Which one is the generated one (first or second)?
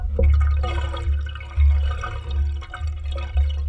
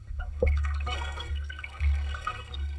second